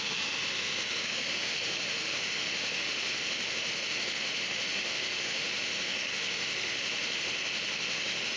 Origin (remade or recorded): remade